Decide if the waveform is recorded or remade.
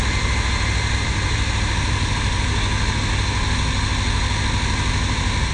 recorded